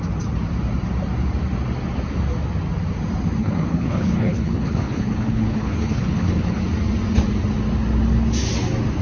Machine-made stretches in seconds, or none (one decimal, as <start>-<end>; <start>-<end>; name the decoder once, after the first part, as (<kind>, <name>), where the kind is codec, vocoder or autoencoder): 3.4-6.6 (codec, HILCodec)